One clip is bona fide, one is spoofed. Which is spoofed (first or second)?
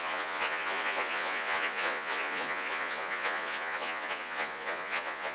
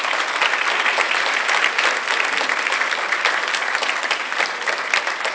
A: first